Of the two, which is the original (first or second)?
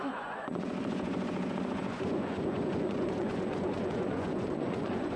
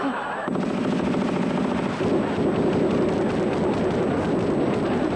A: second